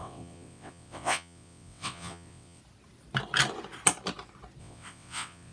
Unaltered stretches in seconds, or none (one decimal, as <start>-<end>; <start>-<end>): 2.6-4.6